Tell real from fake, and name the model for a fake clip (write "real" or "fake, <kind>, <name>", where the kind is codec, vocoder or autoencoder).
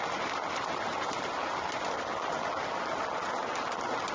real